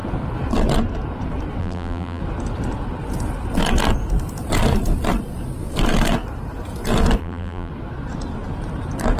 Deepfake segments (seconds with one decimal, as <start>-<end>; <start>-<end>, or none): 1.6-2.2; 7.2-7.7